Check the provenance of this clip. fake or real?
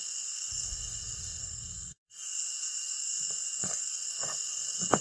fake